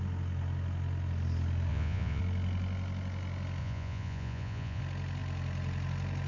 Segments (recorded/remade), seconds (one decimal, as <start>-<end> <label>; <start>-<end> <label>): 0.0-1.7 recorded; 1.7-2.2 remade; 2.2-3.6 recorded; 3.6-4.8 remade; 4.8-6.3 recorded